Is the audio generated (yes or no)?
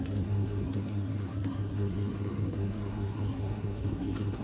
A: yes